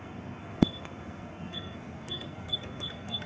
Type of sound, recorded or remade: remade